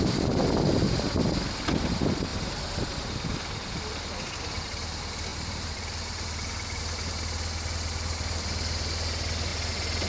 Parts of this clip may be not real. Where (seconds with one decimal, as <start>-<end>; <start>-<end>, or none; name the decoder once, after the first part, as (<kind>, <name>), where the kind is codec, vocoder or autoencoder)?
5.3-6.8 (vocoder, BigVGAN v2)